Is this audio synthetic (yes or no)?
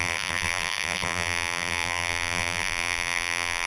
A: yes